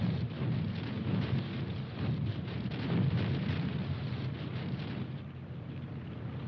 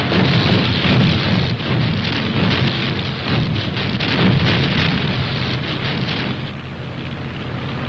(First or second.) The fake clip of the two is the first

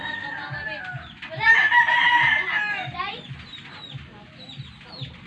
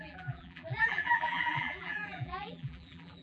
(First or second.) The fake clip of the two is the second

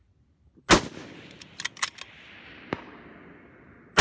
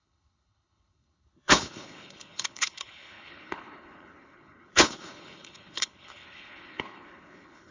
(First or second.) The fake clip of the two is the second